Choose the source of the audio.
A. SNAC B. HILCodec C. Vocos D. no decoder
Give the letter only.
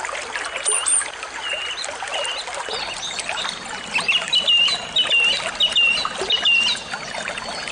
D